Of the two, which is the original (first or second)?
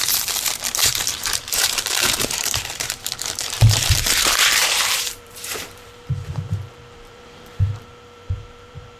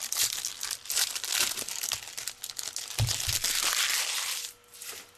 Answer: second